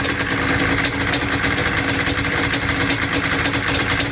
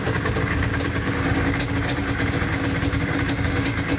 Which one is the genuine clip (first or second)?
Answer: first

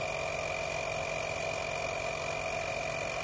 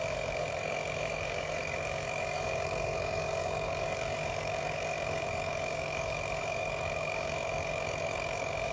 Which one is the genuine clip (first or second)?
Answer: first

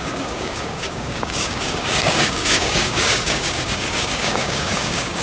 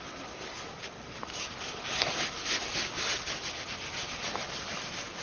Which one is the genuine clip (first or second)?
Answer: second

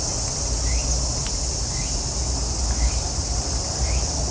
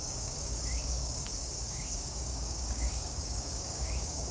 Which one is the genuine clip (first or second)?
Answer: first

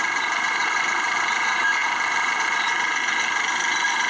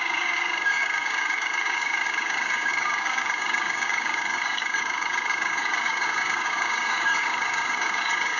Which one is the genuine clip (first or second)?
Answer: first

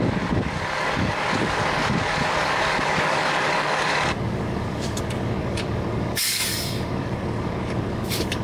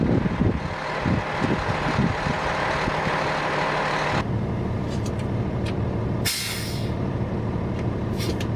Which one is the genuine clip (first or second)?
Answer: second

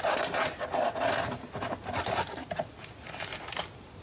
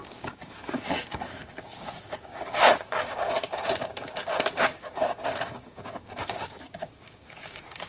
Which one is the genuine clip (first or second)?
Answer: first